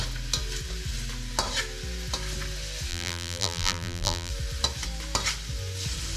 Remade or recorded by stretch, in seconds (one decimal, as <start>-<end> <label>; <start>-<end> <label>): 0.0-2.9 recorded; 2.9-4.3 remade; 4.3-6.2 recorded